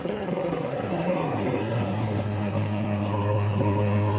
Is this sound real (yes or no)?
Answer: no